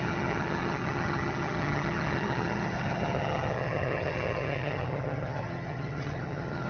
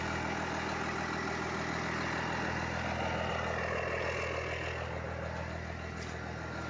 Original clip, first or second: second